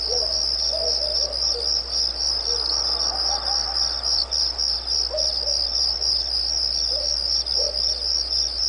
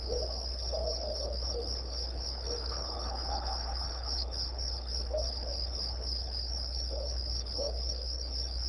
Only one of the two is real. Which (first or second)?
first